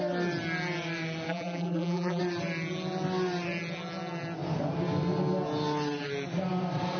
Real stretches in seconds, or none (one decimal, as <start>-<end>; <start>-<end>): 0.0-1.3; 2.2-7.0